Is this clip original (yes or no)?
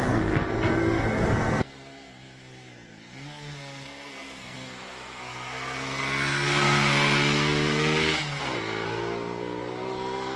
no